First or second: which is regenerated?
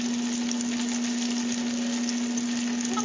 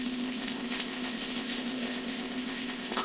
second